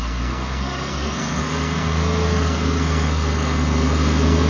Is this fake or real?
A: fake